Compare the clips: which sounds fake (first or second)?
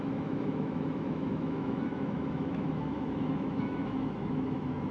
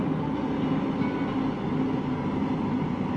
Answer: first